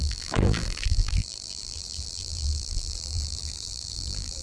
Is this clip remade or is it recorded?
remade